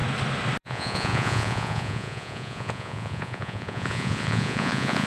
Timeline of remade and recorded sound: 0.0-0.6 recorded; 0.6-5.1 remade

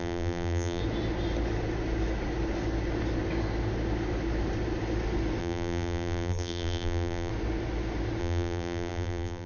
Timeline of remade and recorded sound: 0.0-0.8 remade; 0.8-5.4 recorded; 5.4-7.3 remade; 7.3-8.2 recorded; 8.2-9.5 remade

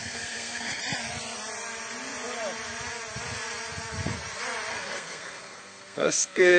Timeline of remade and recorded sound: 0.0-0.8 remade; 0.8-4.7 recorded; 4.7-6.6 remade